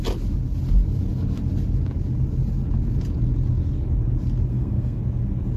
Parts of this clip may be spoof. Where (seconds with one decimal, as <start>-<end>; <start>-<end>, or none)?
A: 4.5-5.0